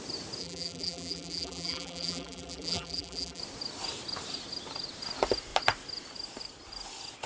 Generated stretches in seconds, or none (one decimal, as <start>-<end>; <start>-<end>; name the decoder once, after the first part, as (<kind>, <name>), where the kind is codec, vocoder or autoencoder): 0.4-3.4 (vocoder, BigVGAN v2)